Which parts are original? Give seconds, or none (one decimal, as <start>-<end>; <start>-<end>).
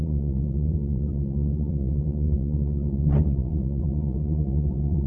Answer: none